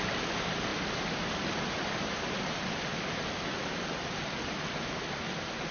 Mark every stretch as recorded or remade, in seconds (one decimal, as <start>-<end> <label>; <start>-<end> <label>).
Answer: 0.0-5.7 recorded